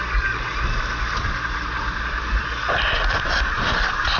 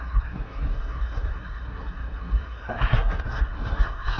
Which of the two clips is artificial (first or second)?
second